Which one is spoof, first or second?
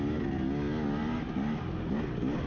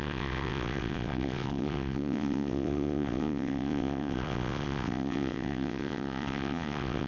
second